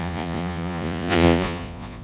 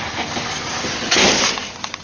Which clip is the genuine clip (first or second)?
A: second